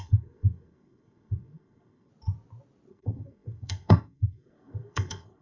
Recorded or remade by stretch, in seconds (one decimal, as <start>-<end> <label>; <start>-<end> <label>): 0.0-2.1 remade; 2.1-2.9 recorded; 2.9-5.4 remade